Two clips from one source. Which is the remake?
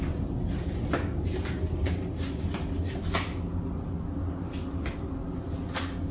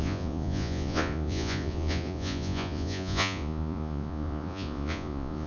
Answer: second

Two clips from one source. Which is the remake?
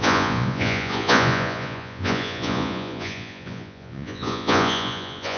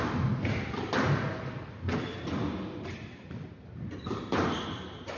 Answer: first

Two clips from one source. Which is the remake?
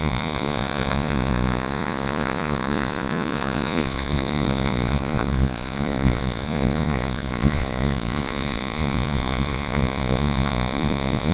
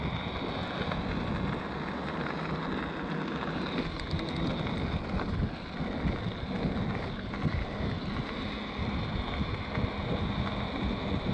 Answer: first